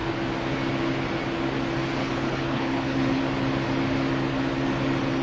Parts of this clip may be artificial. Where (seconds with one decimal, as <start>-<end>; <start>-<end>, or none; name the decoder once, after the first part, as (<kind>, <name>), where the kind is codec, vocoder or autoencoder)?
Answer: 2.0-3.2 (codec, HILCodec)